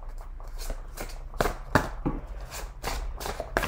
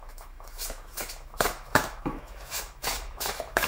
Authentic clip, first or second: first